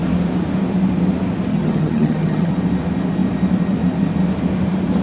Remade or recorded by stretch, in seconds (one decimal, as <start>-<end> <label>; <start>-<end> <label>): 0.0-1.5 recorded; 1.5-2.5 remade; 2.5-5.0 recorded